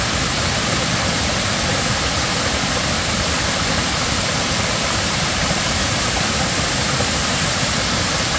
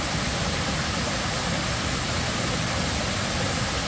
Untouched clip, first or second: second